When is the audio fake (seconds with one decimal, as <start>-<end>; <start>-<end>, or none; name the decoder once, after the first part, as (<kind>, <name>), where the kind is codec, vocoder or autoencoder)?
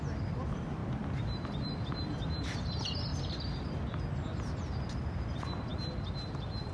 none